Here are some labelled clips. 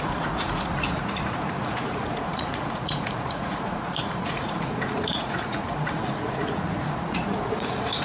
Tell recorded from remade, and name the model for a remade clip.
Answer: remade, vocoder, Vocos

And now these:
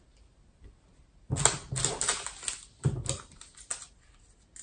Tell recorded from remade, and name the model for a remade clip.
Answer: recorded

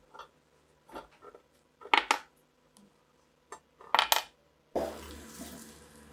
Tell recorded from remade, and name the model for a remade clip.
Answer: recorded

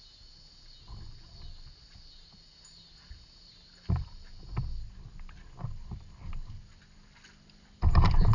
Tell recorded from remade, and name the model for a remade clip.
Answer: recorded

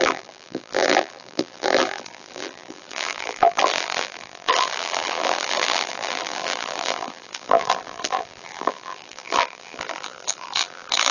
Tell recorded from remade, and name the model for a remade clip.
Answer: remade, vocoder, BigVGAN v2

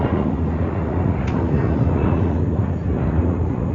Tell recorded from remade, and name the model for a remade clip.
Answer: remade, vocoder, Vocos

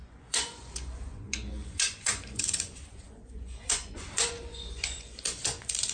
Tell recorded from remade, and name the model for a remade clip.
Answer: remade, vocoder, Vocos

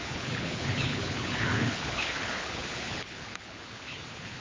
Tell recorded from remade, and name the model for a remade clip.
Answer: remade, codec, HILCodec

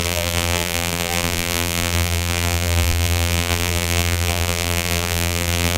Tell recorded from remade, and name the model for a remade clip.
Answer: remade, vocoder, BigVGAN v2